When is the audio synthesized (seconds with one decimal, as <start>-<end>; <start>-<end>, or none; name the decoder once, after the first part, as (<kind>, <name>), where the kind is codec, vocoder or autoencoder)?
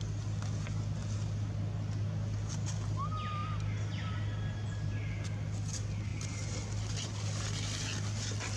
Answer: none